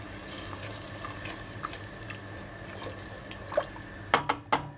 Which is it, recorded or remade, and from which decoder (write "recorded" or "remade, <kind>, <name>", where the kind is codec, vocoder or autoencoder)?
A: recorded